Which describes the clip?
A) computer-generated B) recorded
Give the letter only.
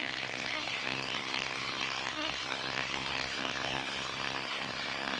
A